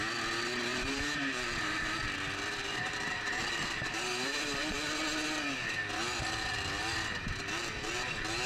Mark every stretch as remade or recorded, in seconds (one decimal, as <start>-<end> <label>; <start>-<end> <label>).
0.0-0.7 recorded; 0.7-2.0 remade; 2.0-2.6 recorded; 2.6-4.8 remade; 4.8-8.5 recorded